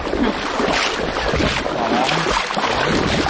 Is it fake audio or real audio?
real